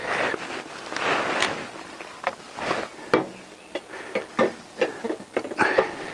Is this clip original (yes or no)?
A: yes